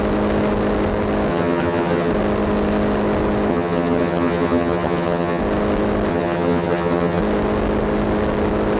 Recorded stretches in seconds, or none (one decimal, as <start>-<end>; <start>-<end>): 0.0-1.3; 2.1-3.5; 5.4-6.1; 7.2-8.8